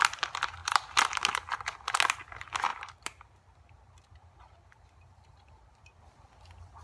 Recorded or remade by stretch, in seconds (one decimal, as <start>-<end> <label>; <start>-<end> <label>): 0.0-2.7 recorded; 2.7-6.0 remade; 6.0-6.8 recorded